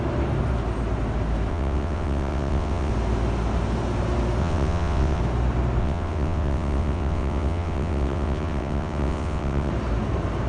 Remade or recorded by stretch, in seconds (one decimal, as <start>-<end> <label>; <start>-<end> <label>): 0.0-1.5 recorded; 1.5-2.9 remade; 2.9-4.4 recorded; 4.4-5.2 remade; 5.2-5.8 recorded; 5.8-9.7 remade; 9.7-10.5 recorded